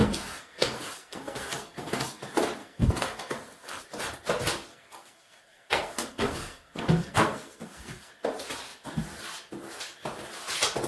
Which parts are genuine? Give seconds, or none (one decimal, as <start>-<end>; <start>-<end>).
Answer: 2.2-2.6; 3.8-4.7; 8.1-10.9